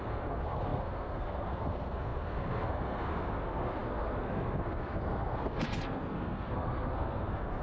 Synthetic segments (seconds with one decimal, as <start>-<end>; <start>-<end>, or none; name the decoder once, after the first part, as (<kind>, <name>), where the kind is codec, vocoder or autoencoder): 0.0-7.6 (codec, SNAC)